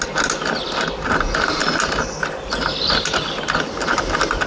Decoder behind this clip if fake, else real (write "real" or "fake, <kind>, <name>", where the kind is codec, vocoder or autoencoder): real